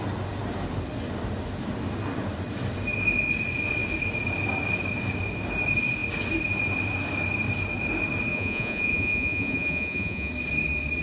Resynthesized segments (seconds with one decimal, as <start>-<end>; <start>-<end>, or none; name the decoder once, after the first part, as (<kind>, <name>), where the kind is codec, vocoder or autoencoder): 8.3-10.3 (vocoder, Vocos)